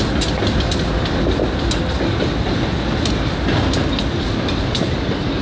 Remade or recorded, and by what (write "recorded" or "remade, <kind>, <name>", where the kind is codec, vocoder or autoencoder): recorded